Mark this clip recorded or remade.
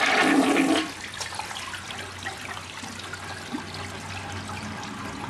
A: recorded